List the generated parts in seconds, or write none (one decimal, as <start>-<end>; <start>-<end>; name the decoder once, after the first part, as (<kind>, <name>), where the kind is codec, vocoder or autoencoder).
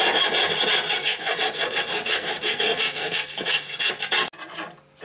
1.0-3.9 (codec, SNAC)